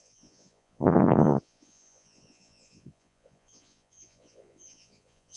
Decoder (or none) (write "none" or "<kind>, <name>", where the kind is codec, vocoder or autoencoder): vocoder, Vocos